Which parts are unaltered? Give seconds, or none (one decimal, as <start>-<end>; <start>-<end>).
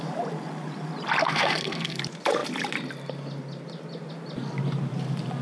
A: 0.0-1.2; 2.0-5.4